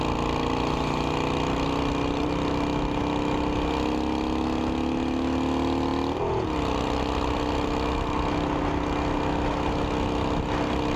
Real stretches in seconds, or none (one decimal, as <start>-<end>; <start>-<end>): 0.0-11.0